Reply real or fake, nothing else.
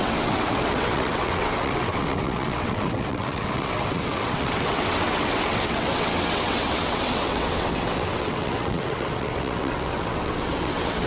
fake